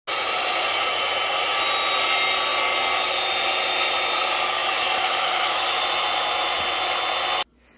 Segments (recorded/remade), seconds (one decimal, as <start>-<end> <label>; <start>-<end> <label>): 0.0-4.6 recorded; 4.6-5.8 remade; 5.8-7.8 recorded